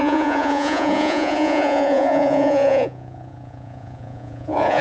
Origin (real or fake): fake